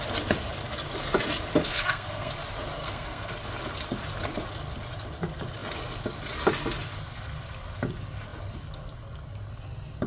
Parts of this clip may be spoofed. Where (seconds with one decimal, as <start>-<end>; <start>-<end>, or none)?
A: 1.6-2.3; 2.8-3.3